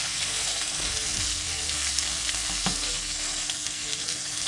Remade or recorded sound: remade